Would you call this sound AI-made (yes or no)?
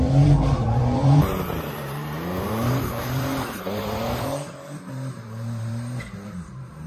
yes